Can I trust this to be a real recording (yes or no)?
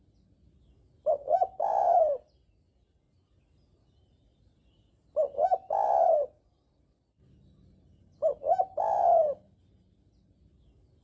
yes